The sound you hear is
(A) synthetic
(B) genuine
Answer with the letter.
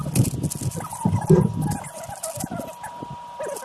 B